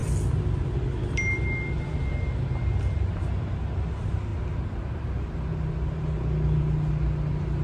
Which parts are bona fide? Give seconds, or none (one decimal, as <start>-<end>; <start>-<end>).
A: 0.0-7.6